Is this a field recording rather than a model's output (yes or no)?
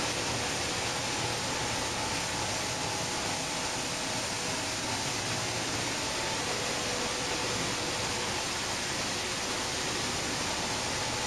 yes